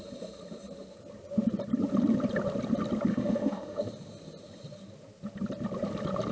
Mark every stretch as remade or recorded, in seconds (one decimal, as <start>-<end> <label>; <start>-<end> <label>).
0.0-3.1 recorded; 3.1-3.9 remade; 3.9-6.3 recorded